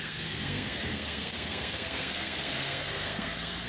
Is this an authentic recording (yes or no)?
no